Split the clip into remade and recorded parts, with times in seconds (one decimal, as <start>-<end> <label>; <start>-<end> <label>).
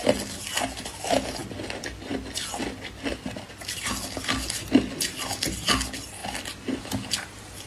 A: 0.0-6.2 recorded; 6.2-6.8 remade; 6.8-7.7 recorded